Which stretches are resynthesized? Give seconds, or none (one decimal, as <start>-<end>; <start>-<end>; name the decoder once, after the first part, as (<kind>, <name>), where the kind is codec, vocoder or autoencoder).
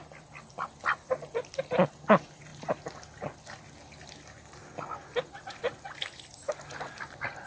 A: none